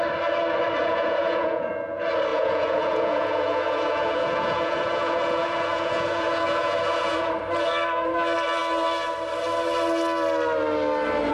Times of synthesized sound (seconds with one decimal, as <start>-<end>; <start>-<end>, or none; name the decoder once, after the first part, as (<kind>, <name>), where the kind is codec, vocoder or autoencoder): 0.8-1.7 (vocoder, Vocos); 2.3-7.3